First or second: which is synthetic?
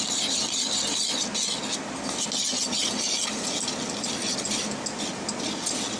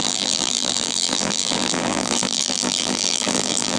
second